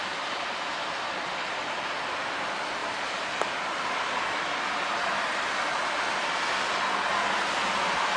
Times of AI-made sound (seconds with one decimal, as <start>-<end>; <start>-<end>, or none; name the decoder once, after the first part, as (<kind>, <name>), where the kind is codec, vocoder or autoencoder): none